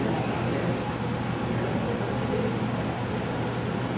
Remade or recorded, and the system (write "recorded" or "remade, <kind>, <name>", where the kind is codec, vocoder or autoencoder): recorded